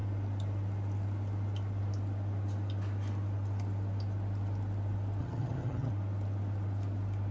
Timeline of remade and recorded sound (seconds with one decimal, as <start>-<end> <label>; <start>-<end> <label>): 0.0-5.2 recorded; 5.2-5.9 remade; 5.9-7.3 recorded